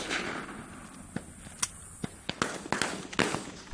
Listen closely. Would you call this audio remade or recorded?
recorded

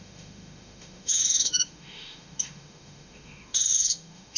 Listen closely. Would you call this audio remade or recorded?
remade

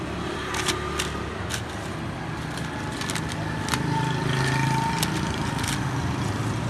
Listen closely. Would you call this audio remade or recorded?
recorded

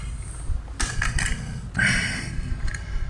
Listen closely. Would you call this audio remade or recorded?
remade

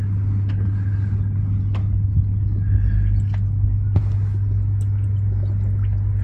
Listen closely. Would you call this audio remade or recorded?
recorded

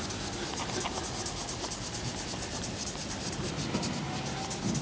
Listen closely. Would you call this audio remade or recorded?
recorded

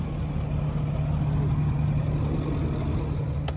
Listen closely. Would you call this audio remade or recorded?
recorded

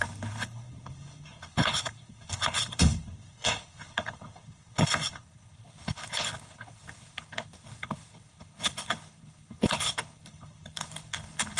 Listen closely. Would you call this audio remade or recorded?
remade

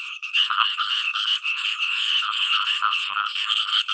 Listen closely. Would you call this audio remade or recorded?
remade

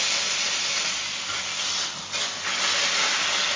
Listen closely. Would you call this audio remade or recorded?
recorded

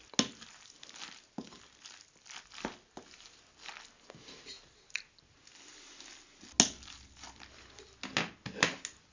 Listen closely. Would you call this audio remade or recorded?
recorded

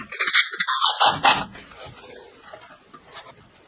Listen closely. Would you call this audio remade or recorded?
recorded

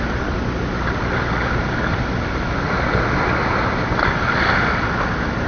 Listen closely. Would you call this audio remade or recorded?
recorded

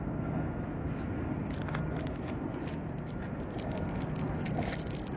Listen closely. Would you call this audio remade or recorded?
recorded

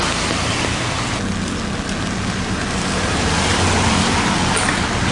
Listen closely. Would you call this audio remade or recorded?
recorded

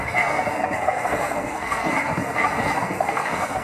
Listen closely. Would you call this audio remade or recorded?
remade